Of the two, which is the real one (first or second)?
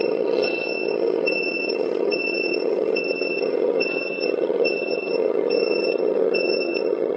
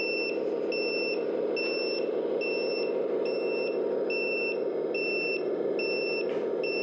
second